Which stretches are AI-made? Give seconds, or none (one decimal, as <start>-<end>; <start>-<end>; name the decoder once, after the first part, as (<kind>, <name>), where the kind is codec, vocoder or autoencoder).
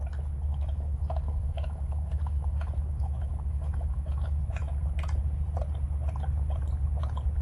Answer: 0.5-4.4 (autoencoder, DAC-VAE)